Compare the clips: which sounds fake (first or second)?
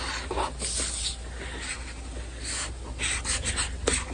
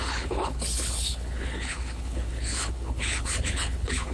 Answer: second